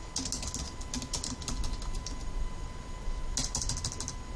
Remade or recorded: recorded